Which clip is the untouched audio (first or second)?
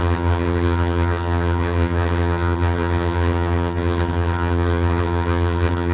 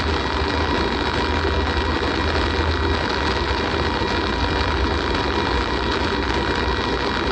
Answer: second